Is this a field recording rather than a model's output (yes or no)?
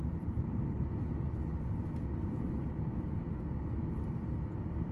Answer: yes